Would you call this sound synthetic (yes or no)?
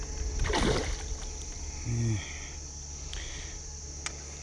no